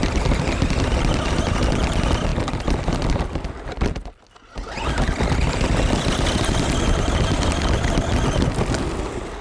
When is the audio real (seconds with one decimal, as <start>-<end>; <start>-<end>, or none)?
0.0-9.4